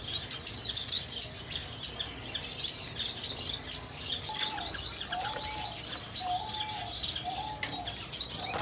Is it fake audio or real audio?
real